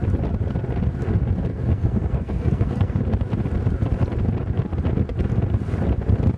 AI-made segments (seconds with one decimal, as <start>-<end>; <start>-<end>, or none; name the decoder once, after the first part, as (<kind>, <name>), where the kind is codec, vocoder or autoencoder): 1.5-3.0 (codec, SNAC)